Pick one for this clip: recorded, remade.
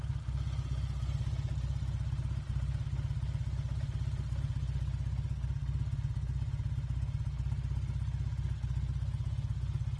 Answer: recorded